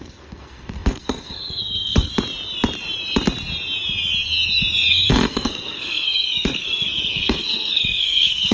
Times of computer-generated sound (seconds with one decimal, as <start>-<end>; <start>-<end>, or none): 0.0-2.1; 4.9-8.5